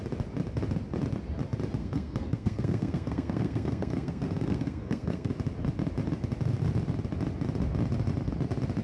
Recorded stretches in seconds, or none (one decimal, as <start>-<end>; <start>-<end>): 0.0-1.8; 5.3-8.8